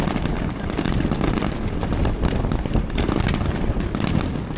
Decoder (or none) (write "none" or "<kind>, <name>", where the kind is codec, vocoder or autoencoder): none